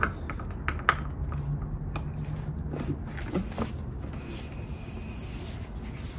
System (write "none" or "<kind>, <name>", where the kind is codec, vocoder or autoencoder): none